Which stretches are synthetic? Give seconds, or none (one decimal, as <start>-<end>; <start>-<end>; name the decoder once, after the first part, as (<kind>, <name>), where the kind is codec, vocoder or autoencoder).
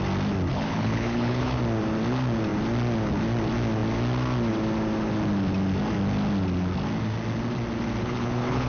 0.5-1.6 (codec, HILCodec); 8.0-8.7